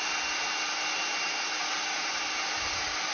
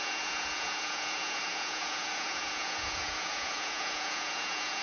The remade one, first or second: second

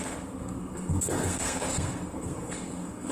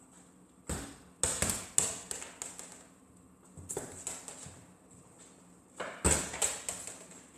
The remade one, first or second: first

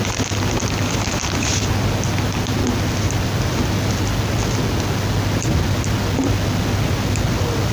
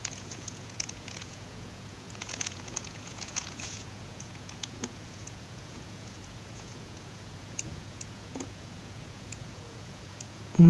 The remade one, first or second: second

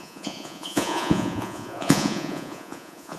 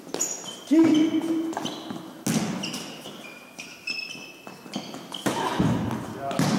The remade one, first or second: first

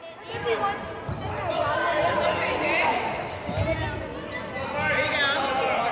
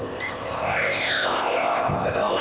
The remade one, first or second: second